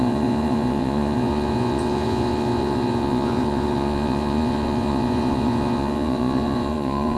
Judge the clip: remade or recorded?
remade